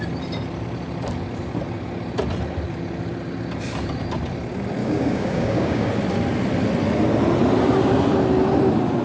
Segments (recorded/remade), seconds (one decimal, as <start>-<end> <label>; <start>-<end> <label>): 0.0-4.8 recorded; 4.8-5.9 remade; 5.9-9.0 recorded